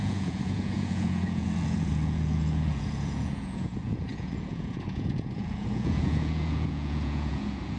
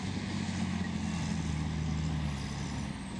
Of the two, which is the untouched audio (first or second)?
second